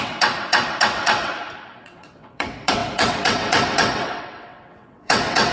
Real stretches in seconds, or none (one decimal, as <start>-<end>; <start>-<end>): 1.3-1.8